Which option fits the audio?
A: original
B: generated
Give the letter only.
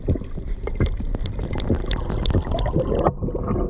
A